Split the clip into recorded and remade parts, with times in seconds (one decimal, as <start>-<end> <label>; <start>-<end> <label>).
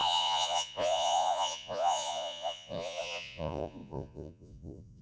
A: 0.0-5.0 remade